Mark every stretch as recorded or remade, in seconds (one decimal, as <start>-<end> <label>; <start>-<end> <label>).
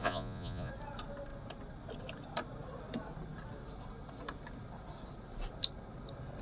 0.0-0.7 remade; 0.7-6.4 recorded